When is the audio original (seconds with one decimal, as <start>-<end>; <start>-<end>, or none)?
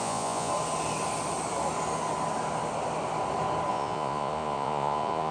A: 0.5-3.7